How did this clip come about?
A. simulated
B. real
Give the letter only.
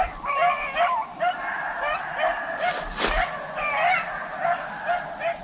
B